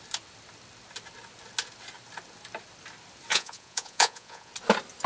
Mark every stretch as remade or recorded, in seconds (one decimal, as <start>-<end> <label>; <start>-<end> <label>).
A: 0.0-3.3 recorded; 3.3-4.5 remade; 4.5-5.1 recorded